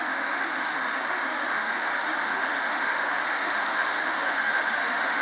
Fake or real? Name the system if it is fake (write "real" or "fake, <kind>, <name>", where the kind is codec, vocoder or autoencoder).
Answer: fake, autoencoder, DAC-VAE